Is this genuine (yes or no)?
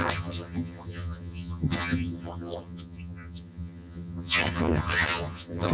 no